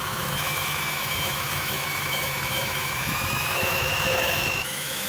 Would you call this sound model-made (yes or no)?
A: yes